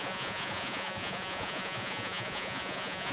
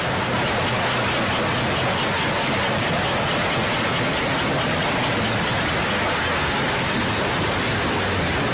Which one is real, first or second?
second